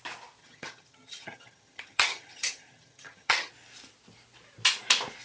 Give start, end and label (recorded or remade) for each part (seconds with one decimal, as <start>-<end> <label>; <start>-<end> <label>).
0.0-0.4 recorded; 0.4-3.5 remade; 3.5-5.2 recorded